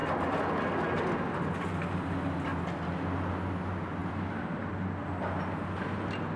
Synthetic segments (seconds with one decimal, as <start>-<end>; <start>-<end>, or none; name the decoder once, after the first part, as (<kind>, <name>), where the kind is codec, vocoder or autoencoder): 0.0-1.0 (vocoder, BigVGAN v2); 2.5-3.3; 4.0-4.7